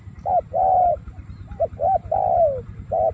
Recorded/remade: recorded